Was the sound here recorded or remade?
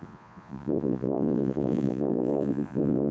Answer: remade